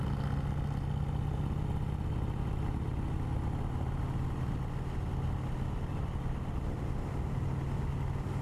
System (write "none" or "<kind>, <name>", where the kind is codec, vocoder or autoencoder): none